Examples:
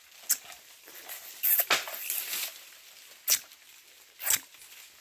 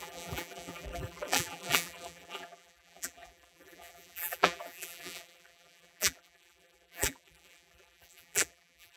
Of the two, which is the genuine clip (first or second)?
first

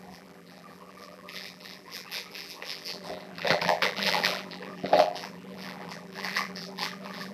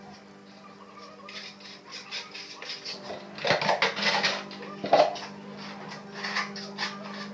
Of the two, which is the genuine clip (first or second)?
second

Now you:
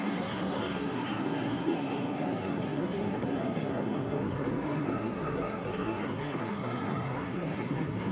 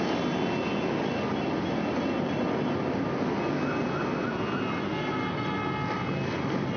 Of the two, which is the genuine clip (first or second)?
second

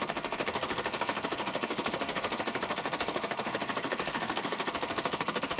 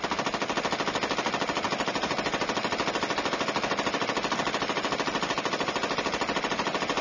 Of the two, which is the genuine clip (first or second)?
second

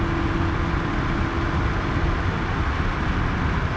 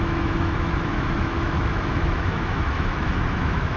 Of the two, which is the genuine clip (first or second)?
first